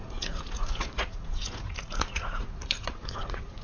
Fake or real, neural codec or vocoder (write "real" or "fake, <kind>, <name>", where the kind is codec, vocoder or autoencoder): fake, vocoder, Vocos